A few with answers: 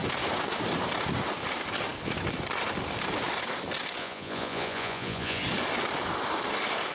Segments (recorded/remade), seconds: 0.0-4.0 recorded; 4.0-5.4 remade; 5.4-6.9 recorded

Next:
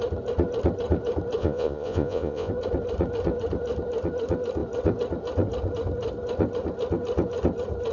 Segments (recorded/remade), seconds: 0.0-1.4 recorded; 1.4-2.5 remade; 2.5-7.9 recorded

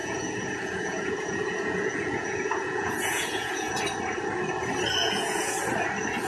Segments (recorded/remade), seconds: 0.0-3.8 remade; 3.8-5.0 recorded; 5.0-5.6 remade; 5.6-6.3 recorded

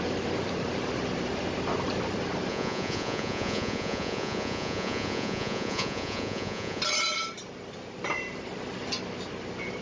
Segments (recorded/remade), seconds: 0.0-2.5 recorded; 2.5-6.8 remade; 6.8-9.8 recorded

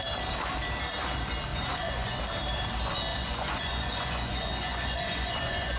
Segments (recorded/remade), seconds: 0.0-1.5 recorded; 1.5-2.2 remade; 2.2-3.1 recorded; 3.1-5.8 remade

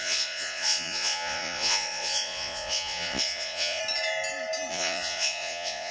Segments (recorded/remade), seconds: 0.0-3.8 remade; 3.8-4.7 recorded; 4.7-5.9 remade